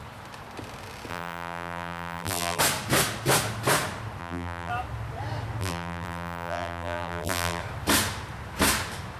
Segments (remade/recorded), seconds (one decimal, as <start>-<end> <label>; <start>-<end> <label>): 0.0-1.1 recorded; 1.1-2.6 remade; 2.6-4.2 recorded; 4.2-4.7 remade; 4.7-5.6 recorded; 5.6-7.6 remade; 7.6-9.2 recorded